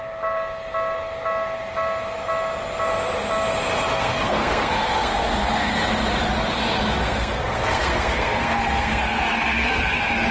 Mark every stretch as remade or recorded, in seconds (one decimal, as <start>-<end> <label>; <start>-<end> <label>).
0.0-3.9 recorded; 3.9-5.7 remade; 5.7-7.0 recorded; 7.0-9.8 remade; 9.8-10.3 recorded